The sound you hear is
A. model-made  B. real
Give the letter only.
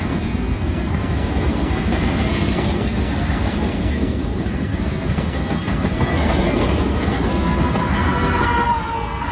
A